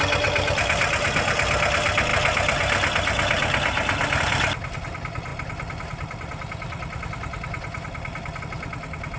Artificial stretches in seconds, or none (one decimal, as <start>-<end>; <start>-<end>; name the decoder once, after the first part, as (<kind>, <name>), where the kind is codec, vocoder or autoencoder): none

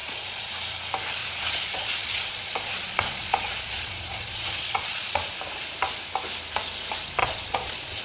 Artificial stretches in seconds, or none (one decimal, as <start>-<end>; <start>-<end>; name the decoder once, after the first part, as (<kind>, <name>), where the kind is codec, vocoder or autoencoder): 0.0-0.5 (vocoder, Vocos); 1.2-5.3; 7.2-8.0

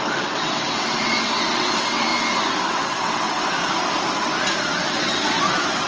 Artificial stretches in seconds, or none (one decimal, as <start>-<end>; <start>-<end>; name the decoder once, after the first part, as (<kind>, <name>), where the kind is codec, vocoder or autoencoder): 0.0-2.1 (vocoder, WaveNeXt); 2.7-3.6; 4.6-5.9

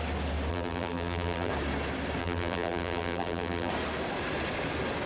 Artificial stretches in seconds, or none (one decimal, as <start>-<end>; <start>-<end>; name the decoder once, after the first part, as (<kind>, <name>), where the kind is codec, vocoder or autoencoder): 0.5-1.5 (vocoder, BigVGAN v2); 2.2-3.7

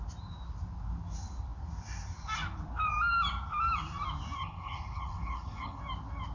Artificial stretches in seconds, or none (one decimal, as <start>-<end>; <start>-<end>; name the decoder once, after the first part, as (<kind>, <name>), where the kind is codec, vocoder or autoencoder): 4.4-5.8 (codec, HILCodec)